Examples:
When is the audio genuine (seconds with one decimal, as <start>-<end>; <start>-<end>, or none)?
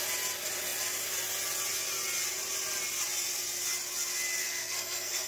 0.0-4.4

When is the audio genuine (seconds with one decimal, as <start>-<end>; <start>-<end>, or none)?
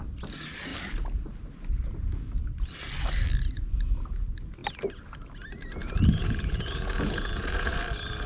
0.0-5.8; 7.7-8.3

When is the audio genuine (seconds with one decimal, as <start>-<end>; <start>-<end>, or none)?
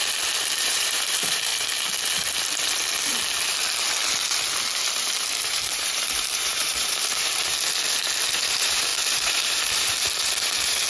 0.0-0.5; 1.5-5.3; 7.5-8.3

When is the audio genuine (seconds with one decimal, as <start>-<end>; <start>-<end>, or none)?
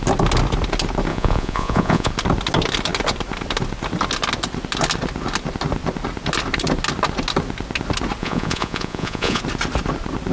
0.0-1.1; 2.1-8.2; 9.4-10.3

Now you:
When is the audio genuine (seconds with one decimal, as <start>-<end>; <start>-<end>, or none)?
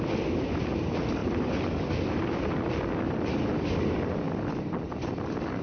0.0-5.6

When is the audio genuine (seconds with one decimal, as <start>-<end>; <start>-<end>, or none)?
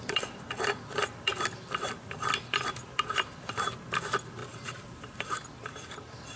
4.4-5.7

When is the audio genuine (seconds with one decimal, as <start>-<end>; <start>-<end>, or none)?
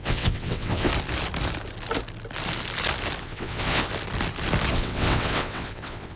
0.9-3.2; 3.9-4.7